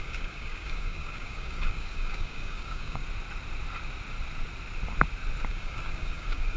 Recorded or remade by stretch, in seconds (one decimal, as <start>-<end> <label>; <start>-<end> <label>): 0.0-3.0 remade; 3.0-5.5 recorded; 5.5-6.6 remade